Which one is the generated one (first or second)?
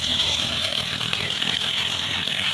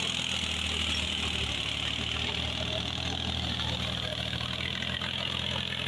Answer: first